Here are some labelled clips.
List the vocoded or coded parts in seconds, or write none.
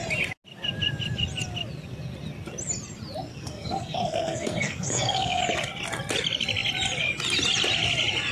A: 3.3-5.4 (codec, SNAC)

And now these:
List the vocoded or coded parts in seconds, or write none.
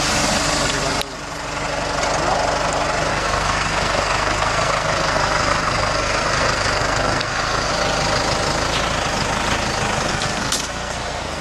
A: 3.1-7.7 (codec, SNAC); 10.1-11.4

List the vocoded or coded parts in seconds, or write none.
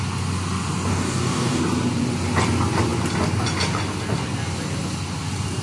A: 0.9-1.6 (codec, DAC)